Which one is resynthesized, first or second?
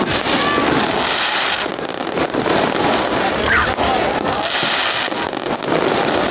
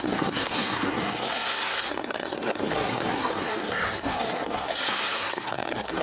second